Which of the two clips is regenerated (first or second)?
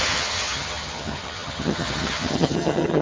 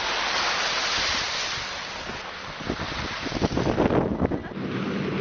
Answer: first